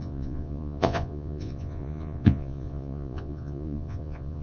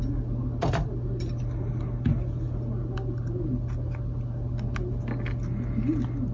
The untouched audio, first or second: second